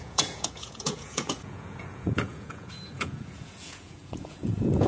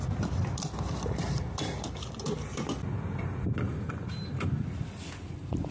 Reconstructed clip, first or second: first